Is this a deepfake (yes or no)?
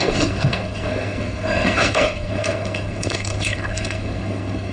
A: yes